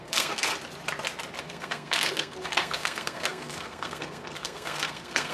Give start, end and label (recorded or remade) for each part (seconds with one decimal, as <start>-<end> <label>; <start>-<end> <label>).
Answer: 0.0-0.5 remade; 0.5-1.4 recorded; 1.4-5.3 remade